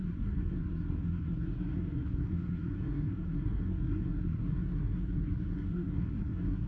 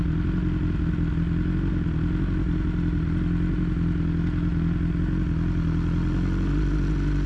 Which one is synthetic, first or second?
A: first